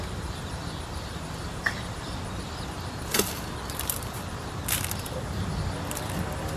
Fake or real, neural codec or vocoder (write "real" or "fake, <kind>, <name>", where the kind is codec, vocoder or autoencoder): fake, vocoder, BigVGAN v2